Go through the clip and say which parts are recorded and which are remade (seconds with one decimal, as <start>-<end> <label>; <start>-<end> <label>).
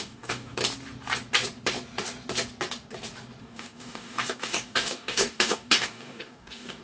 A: 0.0-0.6 remade; 0.6-3.4 recorded; 3.4-6.8 remade